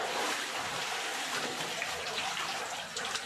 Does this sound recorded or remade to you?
remade